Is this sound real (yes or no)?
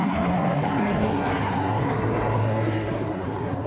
no